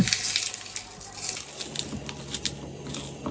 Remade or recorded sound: recorded